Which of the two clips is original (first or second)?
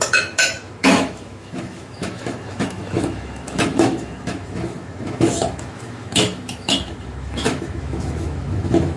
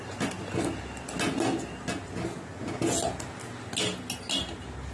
second